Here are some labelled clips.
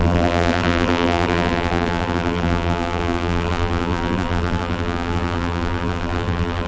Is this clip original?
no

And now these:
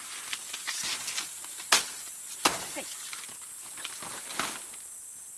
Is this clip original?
yes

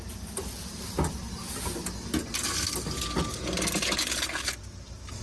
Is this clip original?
yes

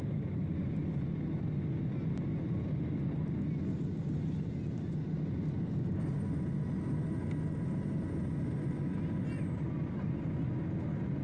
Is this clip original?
yes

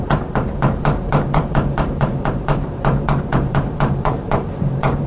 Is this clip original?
no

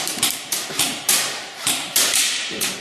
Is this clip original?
no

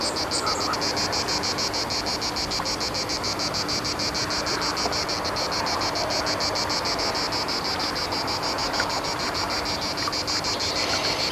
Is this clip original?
yes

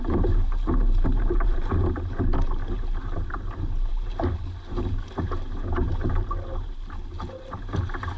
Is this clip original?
no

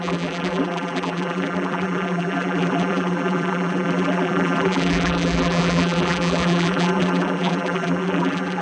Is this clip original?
no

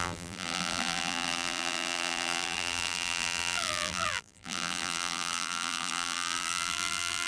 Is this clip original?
no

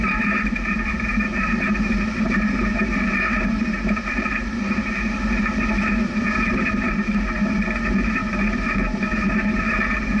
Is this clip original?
no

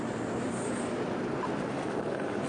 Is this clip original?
yes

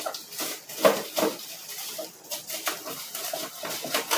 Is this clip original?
yes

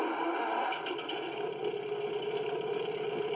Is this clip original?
yes